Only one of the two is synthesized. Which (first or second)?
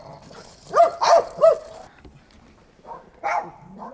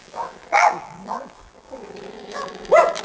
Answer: second